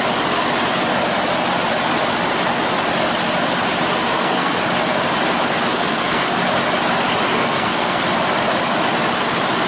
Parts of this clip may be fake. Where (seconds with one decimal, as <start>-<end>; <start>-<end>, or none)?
4.1-4.6; 5.8-6.4; 7.4-8.0